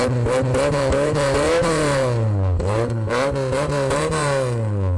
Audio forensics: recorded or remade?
remade